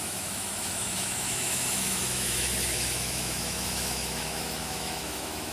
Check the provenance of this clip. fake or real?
fake